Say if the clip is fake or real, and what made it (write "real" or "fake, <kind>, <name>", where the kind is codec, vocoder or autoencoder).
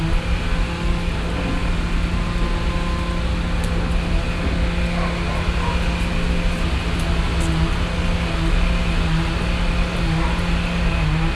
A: real